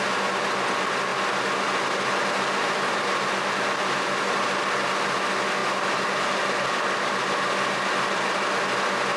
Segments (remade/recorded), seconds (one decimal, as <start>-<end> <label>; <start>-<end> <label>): 0.0-9.2 recorded